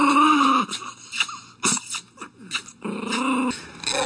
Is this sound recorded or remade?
recorded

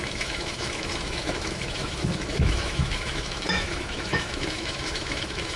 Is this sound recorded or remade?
remade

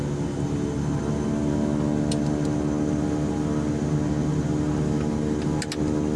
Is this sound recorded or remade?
recorded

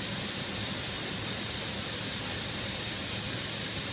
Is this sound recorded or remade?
recorded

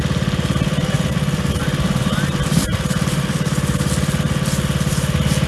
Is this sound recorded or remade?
recorded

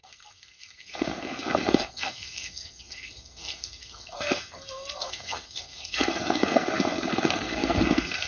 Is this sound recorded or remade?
remade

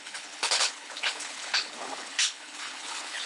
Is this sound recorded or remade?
remade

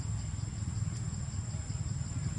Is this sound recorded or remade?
recorded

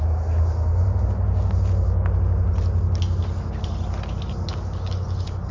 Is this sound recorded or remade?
recorded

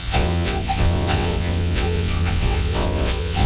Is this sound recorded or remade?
remade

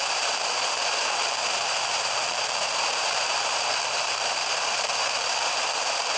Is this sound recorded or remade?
remade